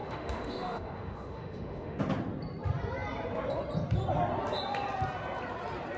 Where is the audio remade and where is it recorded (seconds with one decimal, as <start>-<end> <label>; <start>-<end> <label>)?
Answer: 0.0-2.0 remade; 2.0-6.0 recorded